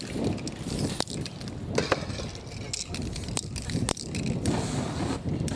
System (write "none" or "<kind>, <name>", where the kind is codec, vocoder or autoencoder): none